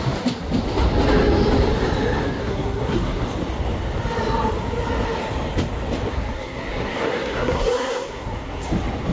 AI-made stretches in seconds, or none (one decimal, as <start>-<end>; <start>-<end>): 2.4-3.2; 6.1-8.7